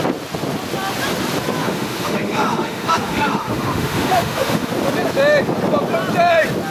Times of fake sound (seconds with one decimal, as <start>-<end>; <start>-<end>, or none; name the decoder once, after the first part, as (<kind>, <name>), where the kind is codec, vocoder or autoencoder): 1.6-4.7 (autoencoder, DAC-VAE)